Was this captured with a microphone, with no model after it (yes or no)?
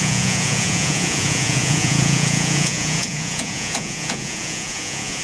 no